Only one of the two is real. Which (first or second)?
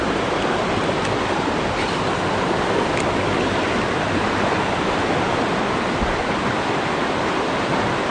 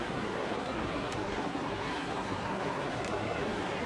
first